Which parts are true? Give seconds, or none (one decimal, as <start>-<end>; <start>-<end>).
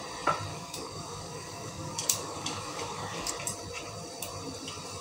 0.0-0.5; 3.3-5.0